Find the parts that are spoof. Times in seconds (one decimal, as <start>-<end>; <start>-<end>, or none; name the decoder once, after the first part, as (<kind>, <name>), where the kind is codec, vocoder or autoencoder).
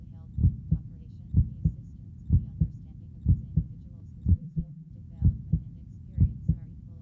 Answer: 4.3-4.9 (vocoder, BigVGAN v2)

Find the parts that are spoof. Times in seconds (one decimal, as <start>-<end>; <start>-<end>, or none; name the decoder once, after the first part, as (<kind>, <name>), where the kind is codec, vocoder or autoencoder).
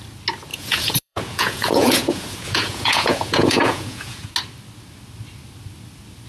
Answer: 0.5-4.3 (vocoder, Vocos)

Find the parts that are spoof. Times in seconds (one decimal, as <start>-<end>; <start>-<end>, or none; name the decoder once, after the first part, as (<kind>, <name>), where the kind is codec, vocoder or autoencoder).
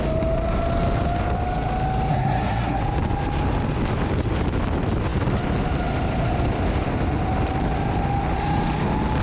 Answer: 2.1-2.8 (codec, SNAC)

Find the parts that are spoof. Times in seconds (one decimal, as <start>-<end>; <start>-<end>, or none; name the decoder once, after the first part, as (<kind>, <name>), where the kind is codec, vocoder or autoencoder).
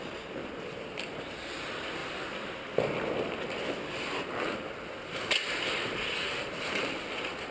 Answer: none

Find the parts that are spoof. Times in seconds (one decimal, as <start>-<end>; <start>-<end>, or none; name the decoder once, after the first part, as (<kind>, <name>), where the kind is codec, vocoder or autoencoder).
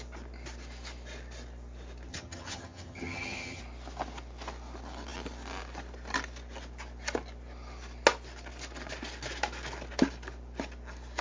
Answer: 2.1-3.6 (vocoder, HiFi-GAN)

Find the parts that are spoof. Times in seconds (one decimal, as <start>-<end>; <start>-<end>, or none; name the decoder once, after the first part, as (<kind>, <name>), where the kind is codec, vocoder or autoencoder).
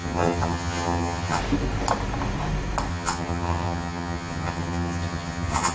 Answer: 0.0-1.4 (vocoder, HiFi-GAN); 2.9-5.7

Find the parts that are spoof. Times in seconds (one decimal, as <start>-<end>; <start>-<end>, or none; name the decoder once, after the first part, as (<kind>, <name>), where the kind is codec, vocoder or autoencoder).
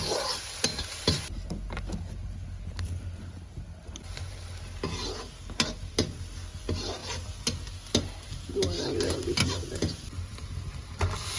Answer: none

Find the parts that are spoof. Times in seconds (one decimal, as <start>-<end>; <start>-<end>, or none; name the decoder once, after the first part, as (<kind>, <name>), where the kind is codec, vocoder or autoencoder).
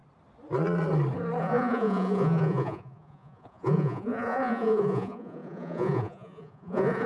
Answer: 1.4-7.1 (vocoder, Vocos)